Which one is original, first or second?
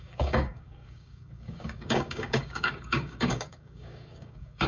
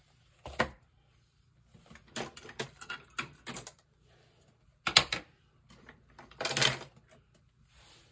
second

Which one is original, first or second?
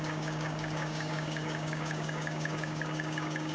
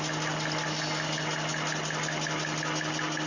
second